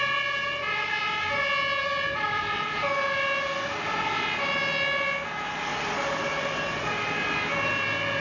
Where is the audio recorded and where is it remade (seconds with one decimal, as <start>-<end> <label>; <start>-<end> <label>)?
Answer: 0.0-1.8 recorded; 1.8-2.8 remade; 2.8-5.7 recorded; 5.7-7.0 remade; 7.0-8.2 recorded